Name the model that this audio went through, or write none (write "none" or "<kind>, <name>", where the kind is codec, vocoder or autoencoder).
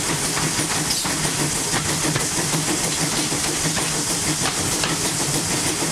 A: none